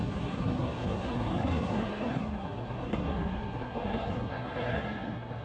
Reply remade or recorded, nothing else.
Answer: remade